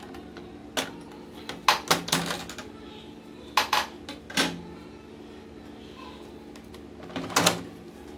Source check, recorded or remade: recorded